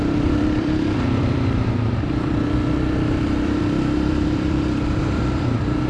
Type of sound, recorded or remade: remade